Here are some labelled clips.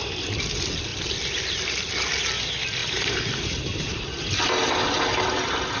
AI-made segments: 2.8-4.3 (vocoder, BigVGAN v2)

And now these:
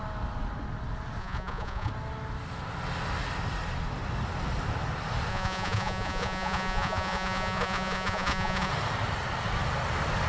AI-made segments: 1.2-1.9 (vocoder, Vocos); 5.3-8.7